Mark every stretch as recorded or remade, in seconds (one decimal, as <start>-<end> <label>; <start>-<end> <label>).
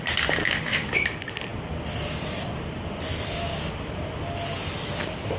0.0-0.4 recorded; 0.4-0.9 remade; 0.9-5.4 recorded